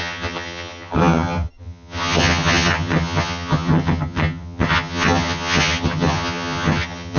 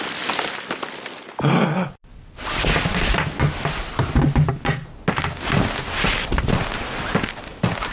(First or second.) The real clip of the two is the second